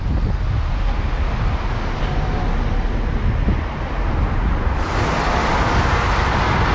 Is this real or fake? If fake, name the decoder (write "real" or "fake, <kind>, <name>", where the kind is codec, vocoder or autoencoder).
real